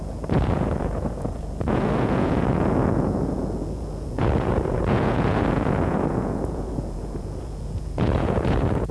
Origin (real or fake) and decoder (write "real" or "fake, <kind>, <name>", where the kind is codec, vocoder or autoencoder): fake, vocoder, Vocos